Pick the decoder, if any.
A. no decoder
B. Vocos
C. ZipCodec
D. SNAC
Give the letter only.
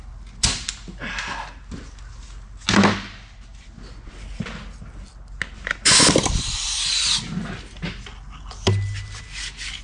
A